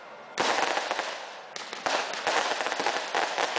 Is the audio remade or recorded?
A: recorded